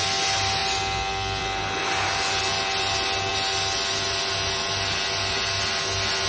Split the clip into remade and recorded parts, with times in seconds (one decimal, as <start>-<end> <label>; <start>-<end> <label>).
0.0-6.3 recorded

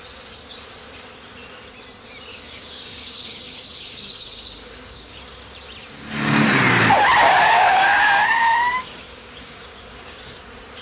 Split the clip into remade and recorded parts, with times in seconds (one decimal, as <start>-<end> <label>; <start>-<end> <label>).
0.0-2.3 recorded; 2.3-5.2 remade; 5.2-7.2 recorded; 7.2-10.2 remade; 10.2-10.8 recorded

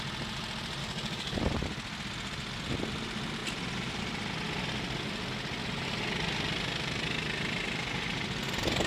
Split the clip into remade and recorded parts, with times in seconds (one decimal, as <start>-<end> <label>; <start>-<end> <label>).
0.0-0.8 recorded; 0.8-1.4 remade; 1.4-8.9 recorded

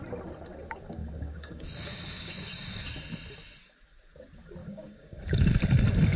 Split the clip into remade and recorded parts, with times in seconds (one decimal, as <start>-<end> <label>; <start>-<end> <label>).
0.0-1.0 recorded; 1.0-2.5 remade; 2.5-4.6 recorded; 4.6-5.2 remade; 5.2-6.2 recorded

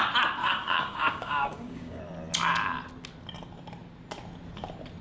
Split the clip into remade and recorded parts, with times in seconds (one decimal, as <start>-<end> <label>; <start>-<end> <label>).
0.0-0.4 recorded; 0.4-2.0 remade; 2.0-5.0 recorded

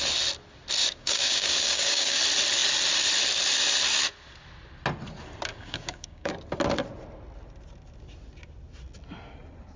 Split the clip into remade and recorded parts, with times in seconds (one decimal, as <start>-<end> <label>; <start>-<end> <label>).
0.0-0.8 recorded; 0.8-2.2 remade; 2.2-5.5 recorded; 5.5-6.3 remade; 6.3-9.8 recorded